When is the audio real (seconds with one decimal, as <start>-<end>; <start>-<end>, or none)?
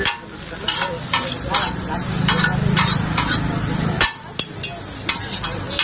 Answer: 0.0-5.8